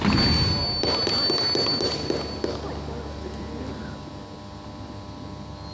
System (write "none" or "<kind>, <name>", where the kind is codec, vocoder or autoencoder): none